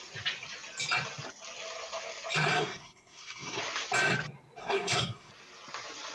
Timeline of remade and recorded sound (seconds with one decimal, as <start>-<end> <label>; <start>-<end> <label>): 0.0-2.5 recorded; 2.5-3.6 remade; 3.6-4.6 recorded; 4.6-5.3 remade; 5.3-6.1 recorded